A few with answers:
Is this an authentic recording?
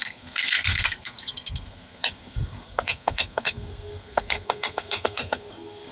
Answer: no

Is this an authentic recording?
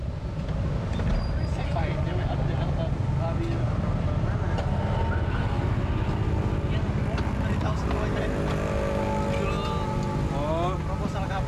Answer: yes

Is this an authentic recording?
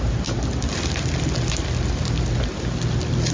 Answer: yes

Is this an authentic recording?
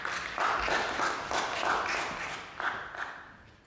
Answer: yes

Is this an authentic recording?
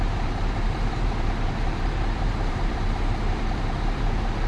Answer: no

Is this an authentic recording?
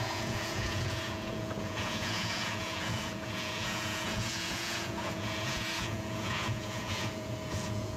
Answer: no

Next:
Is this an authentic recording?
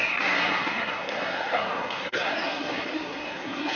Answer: no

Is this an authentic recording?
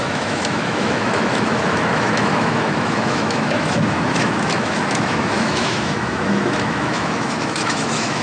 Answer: no